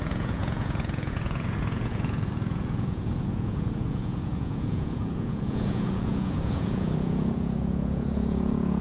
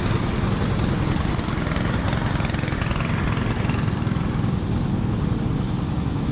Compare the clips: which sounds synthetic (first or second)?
first